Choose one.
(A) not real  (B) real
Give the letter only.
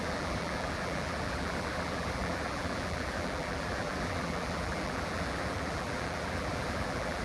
A